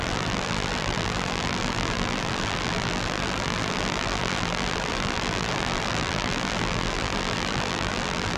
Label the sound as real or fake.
fake